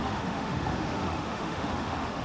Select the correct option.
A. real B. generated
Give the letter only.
B